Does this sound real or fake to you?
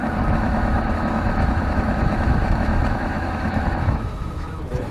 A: fake